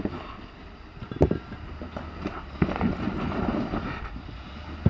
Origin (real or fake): real